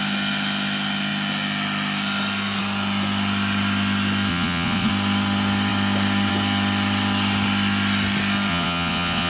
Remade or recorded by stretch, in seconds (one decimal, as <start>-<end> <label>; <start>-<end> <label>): 0.0-4.3 recorded; 4.3-4.9 remade; 4.9-8.5 recorded; 8.5-9.3 remade

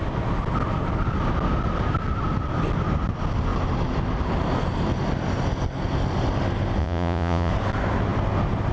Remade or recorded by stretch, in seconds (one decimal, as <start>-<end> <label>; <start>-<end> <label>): 0.0-6.8 recorded; 6.8-7.5 remade; 7.5-8.7 recorded